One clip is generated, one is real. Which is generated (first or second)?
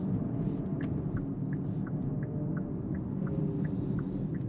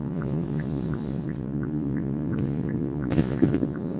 second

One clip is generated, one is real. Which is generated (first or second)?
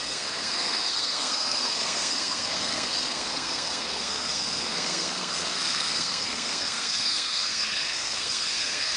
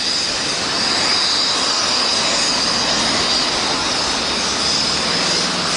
first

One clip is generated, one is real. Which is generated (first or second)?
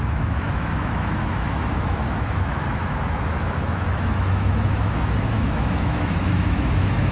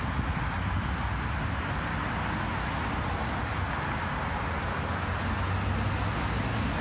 first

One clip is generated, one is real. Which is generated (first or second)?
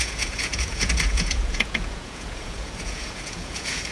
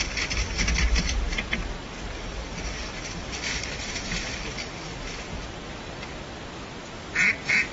first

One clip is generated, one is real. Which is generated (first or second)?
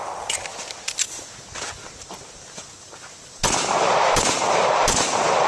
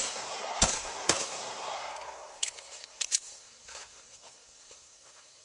second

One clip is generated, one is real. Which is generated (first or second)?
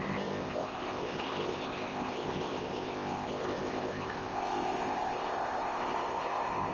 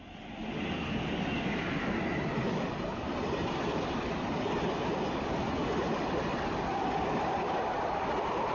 first